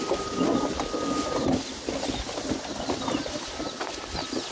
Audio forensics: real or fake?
real